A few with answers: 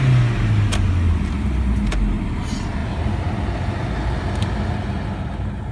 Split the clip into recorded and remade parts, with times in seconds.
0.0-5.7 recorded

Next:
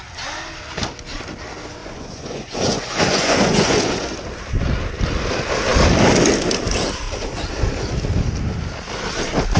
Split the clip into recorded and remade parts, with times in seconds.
0.0-1.8 recorded; 1.8-4.0 remade; 4.0-9.6 recorded

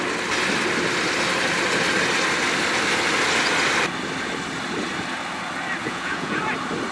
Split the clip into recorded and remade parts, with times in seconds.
0.0-5.8 recorded; 5.8-6.4 remade; 6.4-6.9 recorded

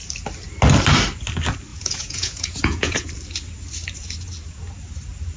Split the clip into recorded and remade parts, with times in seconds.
0.0-1.7 recorded; 1.7-3.1 remade; 3.1-5.4 recorded

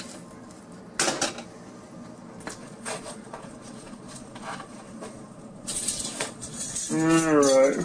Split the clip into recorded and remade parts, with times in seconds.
0.0-2.6 recorded; 2.6-6.9 remade; 6.9-7.8 recorded

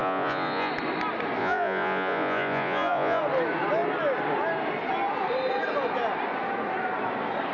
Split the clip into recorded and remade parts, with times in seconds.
0.0-0.7 remade; 0.7-1.4 recorded; 1.4-3.2 remade; 3.2-7.5 recorded